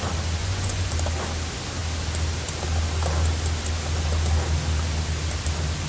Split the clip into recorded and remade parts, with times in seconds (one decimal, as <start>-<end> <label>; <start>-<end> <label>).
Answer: 0.0-0.4 recorded; 0.4-0.9 remade; 0.9-5.9 recorded